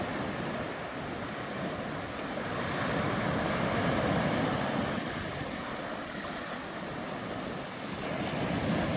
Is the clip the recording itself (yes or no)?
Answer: yes